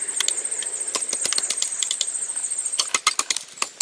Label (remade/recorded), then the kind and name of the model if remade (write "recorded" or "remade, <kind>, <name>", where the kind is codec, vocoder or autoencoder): recorded